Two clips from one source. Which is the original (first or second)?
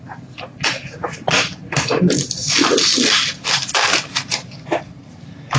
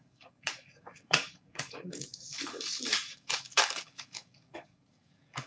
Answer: first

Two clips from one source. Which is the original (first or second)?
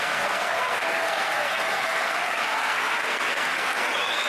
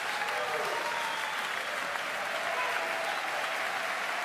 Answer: second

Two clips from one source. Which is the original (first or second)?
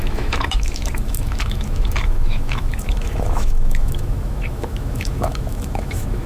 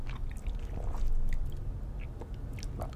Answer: second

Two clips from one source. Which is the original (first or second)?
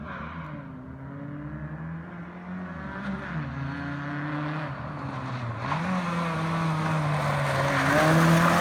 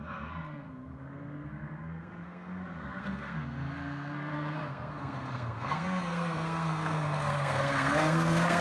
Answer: first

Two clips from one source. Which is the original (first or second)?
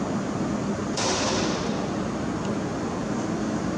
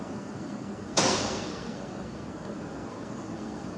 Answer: first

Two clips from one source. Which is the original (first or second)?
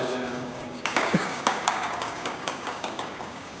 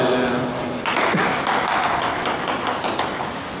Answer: second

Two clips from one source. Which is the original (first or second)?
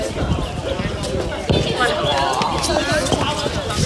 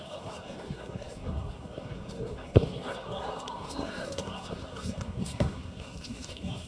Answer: first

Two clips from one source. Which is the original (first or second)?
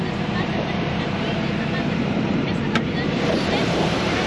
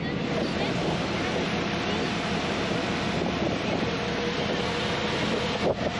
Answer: second